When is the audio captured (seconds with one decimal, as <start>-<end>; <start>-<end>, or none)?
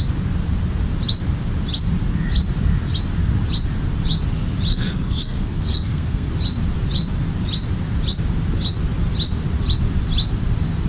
0.0-4.7; 6.3-10.9